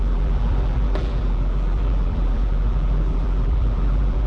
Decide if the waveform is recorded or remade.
remade